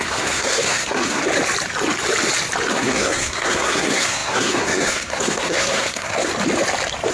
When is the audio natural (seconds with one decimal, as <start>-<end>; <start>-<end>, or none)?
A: 1.2-2.7; 6.3-7.1